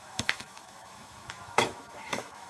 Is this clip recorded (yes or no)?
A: no